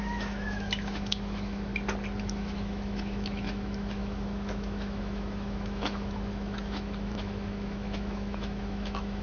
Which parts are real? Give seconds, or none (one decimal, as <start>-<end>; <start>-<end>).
1.7-2.2